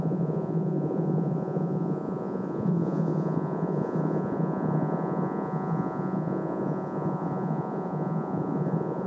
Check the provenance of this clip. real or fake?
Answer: fake